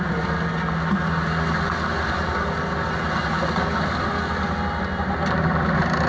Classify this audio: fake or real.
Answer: real